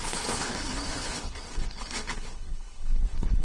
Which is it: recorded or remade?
remade